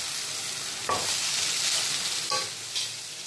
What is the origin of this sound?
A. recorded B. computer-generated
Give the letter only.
A